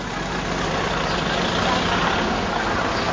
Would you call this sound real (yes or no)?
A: yes